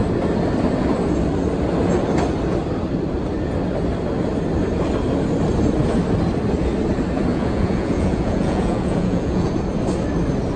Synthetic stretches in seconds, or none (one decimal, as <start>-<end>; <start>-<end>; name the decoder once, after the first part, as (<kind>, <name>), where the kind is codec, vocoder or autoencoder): 7.3-9.5 (vocoder, Vocos)

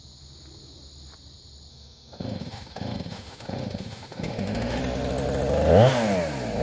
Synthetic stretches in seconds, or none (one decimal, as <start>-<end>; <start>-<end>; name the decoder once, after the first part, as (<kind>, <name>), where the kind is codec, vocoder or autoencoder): 1.7-4.8 (autoencoder, DAC-VAE)

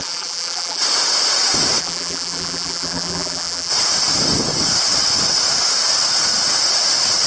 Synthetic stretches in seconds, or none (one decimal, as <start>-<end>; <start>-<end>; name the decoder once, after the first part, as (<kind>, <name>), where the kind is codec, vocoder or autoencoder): 0.0-0.8 (vocoder, BigVGAN v2); 1.8-3.7

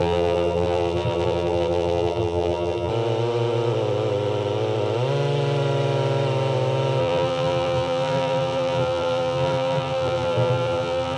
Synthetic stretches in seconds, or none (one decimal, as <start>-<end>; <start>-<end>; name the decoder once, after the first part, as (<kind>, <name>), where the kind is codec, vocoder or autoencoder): 0.0-2.9 (vocoder, BigVGAN v2); 7.0-11.2

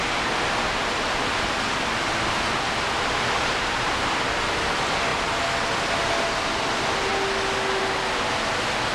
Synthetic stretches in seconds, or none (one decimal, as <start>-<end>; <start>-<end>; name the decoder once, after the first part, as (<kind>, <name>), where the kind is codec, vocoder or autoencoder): none

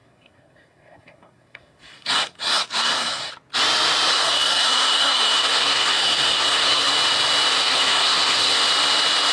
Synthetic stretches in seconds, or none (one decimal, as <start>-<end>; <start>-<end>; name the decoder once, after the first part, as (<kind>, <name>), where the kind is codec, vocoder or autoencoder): 0.0-3.3 (codec, SNAC); 4.1-6.9; 7.5-8.6

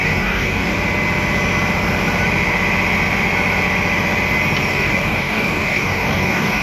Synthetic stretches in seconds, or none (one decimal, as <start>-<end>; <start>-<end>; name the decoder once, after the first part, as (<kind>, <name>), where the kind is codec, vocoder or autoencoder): 0.0-0.7 (codec, DAC); 4.7-6.6